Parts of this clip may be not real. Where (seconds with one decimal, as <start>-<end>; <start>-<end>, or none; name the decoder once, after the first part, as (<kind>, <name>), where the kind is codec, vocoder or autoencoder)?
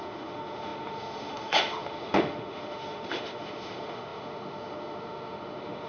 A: 0.0-5.9 (autoencoder, DAC-VAE)